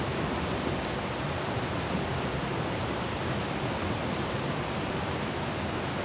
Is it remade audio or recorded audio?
recorded